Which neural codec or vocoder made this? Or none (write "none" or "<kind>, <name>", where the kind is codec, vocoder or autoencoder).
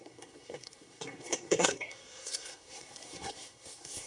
codec, SNAC